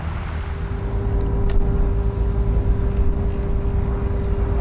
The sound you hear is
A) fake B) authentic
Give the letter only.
B